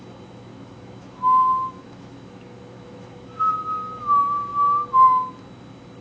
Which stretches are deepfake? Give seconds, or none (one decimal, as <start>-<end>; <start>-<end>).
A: 0.5-3.4